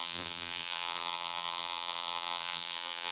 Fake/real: fake